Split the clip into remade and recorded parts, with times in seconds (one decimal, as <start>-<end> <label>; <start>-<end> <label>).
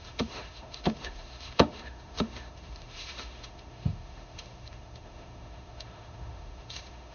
0.0-7.1 remade